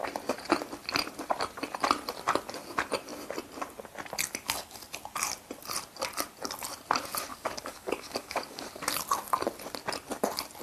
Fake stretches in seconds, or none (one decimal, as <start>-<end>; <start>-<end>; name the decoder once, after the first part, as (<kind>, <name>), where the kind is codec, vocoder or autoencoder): 7.3-8.8 (codec, DAC)